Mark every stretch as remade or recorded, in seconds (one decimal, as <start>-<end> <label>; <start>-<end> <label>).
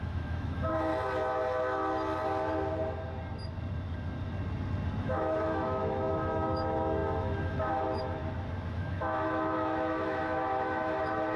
0.0-0.9 remade; 0.9-5.0 recorded; 5.0-8.2 remade; 8.2-8.7 recorded; 8.7-11.4 remade